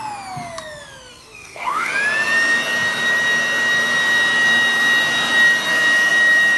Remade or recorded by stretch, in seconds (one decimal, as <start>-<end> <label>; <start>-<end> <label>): 0.0-1.1 recorded; 1.1-1.9 remade; 1.9-6.6 recorded